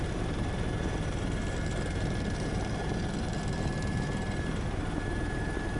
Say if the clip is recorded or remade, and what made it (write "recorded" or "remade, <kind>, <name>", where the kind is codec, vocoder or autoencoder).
remade, vocoder, BigVGAN v2